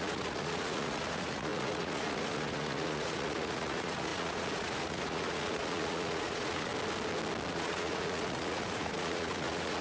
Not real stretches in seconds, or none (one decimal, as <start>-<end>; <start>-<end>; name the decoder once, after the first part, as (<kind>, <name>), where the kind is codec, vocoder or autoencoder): 0.0-6.7 (vocoder, Vocos); 7.5-9.8